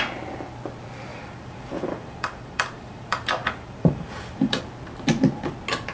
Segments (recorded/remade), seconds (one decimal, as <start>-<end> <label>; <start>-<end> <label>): 0.0-1.1 recorded; 1.1-4.6 remade; 4.6-5.9 recorded